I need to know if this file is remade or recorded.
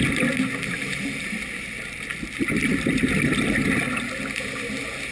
recorded